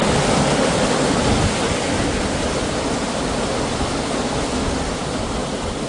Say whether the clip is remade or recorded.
recorded